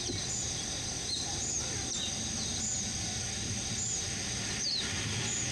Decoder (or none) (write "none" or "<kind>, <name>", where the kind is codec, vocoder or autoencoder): none